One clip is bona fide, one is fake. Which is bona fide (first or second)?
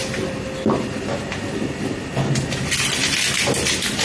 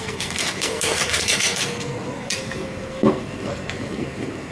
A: first